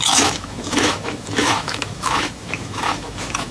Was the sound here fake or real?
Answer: fake